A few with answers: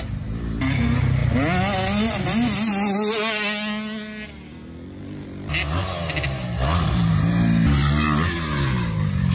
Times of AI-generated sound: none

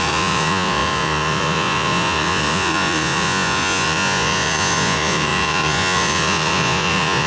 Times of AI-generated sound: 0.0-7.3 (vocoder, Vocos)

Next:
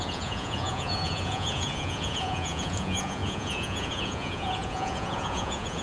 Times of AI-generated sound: 0.0-5.8 (vocoder, Vocos)